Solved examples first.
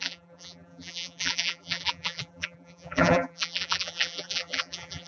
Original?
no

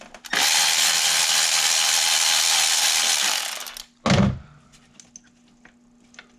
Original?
yes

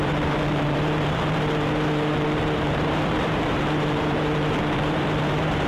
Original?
no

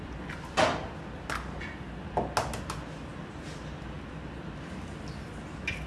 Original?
yes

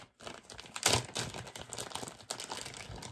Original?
yes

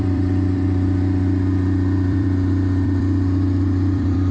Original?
no